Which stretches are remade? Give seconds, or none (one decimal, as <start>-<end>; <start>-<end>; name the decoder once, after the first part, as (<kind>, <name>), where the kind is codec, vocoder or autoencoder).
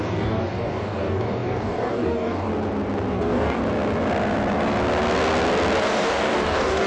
0.0-2.5 (codec, DAC); 3.1-3.6; 5.8-6.9